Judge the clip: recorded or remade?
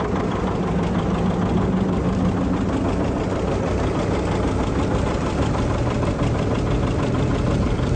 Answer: recorded